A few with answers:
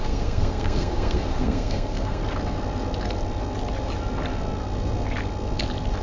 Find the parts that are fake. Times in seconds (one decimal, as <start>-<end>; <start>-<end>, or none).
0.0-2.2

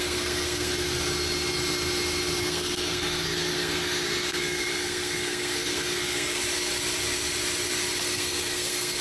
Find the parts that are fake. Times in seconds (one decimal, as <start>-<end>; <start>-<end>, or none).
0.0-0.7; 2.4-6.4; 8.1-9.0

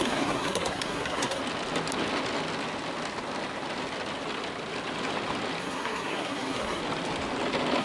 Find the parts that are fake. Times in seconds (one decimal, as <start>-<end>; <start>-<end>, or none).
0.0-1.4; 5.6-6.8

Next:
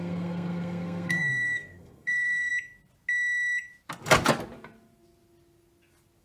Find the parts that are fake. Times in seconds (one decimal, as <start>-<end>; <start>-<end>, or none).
0.0-2.5

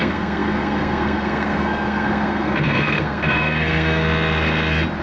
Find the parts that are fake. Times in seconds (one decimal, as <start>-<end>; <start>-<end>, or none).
0.0-4.0

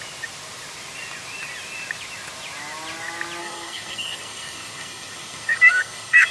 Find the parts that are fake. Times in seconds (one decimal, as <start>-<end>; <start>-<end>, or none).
3.4-6.3